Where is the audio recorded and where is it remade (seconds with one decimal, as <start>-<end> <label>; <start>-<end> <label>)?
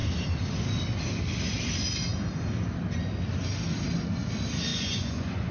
0.0-4.7 recorded; 4.7-5.5 remade